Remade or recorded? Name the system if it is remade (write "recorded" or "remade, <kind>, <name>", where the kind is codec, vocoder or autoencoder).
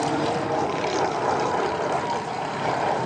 remade, vocoder, BigVGAN v2